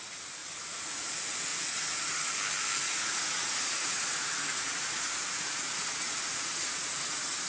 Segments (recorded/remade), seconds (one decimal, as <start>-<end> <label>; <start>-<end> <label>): 0.0-0.4 recorded; 0.4-1.1 remade; 1.1-1.5 recorded; 1.5-2.3 remade; 2.3-2.8 recorded; 2.8-7.5 remade